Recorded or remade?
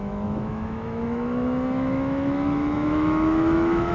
remade